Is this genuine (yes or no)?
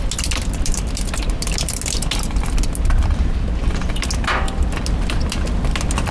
yes